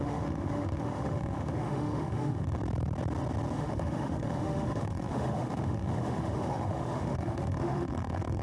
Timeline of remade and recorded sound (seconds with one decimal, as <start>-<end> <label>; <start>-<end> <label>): 0.0-2.6 remade; 2.6-3.6 recorded; 3.6-8.4 remade